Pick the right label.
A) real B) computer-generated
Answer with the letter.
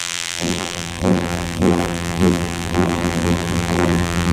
B